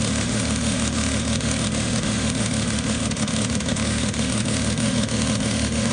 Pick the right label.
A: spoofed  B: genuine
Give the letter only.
A